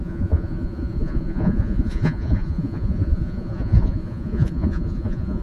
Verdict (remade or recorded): remade